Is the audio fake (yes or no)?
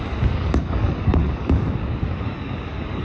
yes